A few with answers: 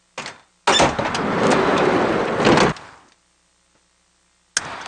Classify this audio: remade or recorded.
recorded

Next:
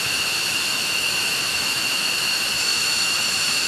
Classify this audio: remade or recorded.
remade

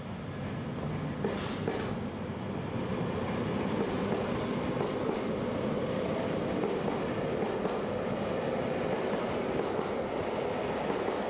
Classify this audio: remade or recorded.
recorded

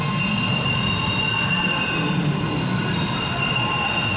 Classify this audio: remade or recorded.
recorded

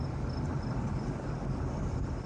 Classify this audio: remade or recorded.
recorded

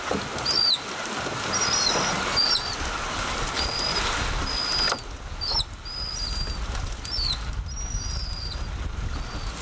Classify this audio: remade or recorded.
recorded